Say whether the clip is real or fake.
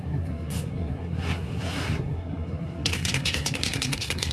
fake